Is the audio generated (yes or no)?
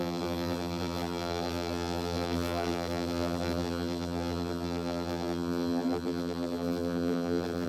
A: yes